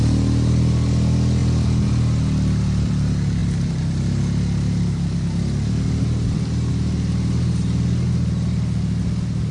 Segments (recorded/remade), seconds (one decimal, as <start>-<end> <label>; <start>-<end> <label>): 0.0-9.5 recorded